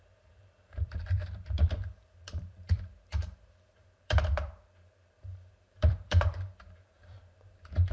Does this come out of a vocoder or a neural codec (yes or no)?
yes